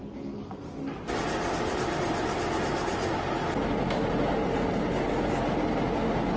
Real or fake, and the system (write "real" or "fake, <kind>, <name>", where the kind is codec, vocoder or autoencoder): real